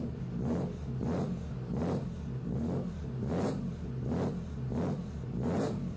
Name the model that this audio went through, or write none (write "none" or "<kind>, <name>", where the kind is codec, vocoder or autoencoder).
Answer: none